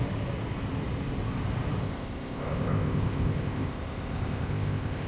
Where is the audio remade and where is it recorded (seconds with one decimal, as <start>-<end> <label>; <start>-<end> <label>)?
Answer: 0.0-1.8 recorded; 1.8-5.1 remade